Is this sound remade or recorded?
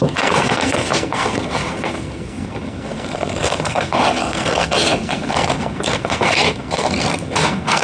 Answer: remade